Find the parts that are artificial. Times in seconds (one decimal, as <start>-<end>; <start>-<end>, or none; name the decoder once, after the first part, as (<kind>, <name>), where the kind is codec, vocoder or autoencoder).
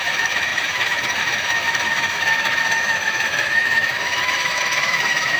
0.0-5.4 (autoencoder, DAC-VAE)